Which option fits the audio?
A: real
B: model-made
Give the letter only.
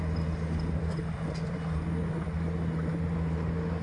A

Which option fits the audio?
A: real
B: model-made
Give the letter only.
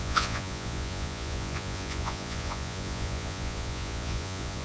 B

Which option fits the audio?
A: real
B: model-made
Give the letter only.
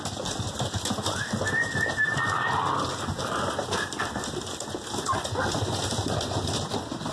A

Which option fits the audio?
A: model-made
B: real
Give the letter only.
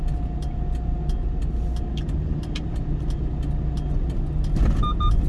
B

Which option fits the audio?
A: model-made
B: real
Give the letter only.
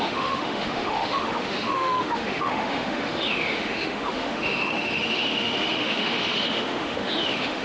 A